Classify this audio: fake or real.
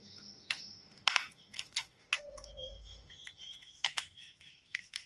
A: fake